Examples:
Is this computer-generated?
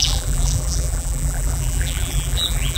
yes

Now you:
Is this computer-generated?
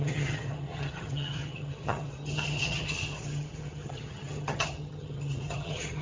yes